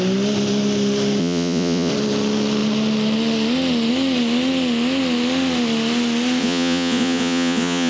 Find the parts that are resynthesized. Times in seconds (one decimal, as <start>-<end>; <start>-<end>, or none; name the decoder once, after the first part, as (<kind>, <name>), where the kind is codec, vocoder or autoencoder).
1.2-1.9 (vocoder, Vocos); 6.4-7.9